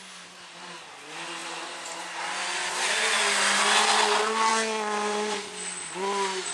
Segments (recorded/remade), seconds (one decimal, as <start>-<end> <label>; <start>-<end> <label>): 0.0-6.5 recorded